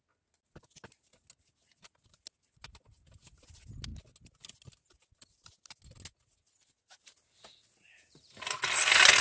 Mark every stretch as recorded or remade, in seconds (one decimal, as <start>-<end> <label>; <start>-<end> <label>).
0.0-9.2 recorded